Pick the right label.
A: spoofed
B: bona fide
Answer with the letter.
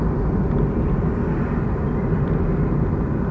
B